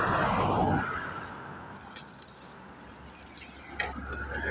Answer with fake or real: real